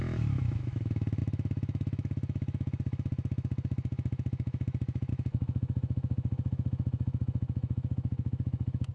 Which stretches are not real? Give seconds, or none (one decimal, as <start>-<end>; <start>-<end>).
0.0-8.9